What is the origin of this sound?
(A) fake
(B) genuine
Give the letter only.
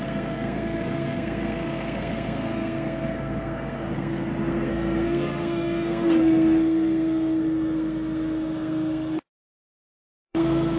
A